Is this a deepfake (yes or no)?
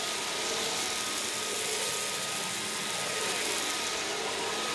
no